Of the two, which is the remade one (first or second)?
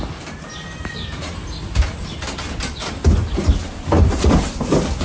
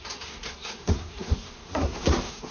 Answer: second